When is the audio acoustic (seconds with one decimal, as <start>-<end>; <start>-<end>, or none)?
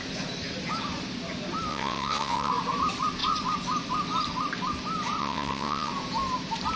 0.0-1.7; 2.5-5.2; 5.9-6.8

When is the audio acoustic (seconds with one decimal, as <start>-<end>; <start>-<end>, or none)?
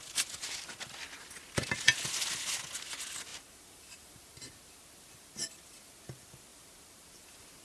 0.0-3.3; 4.5-6.5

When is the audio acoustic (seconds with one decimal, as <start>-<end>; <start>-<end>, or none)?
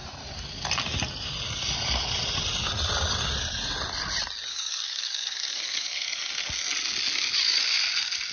0.0-4.5; 6.3-8.3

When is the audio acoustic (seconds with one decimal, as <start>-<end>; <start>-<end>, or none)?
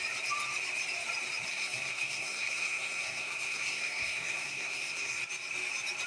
0.0-1.5; 5.2-6.1